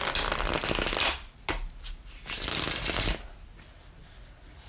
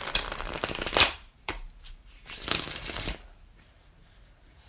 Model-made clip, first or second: second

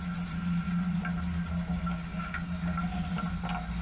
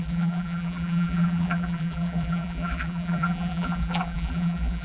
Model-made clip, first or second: second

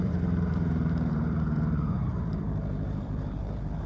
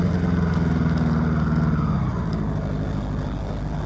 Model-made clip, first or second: first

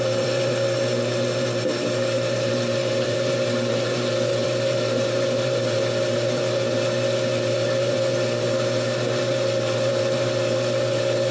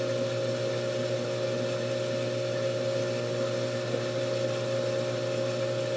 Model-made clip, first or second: first